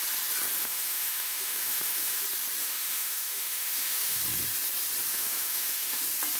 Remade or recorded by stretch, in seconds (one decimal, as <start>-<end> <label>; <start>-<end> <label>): 0.0-0.6 recorded; 0.6-2.2 remade; 2.2-2.6 recorded; 2.6-4.2 remade; 4.2-5.1 recorded; 5.1-6.0 remade; 6.0-6.4 recorded